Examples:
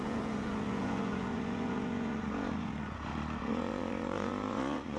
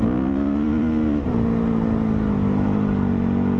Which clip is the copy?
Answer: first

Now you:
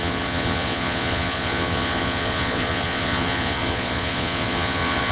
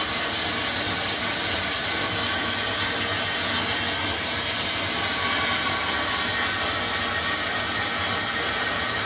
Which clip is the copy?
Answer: first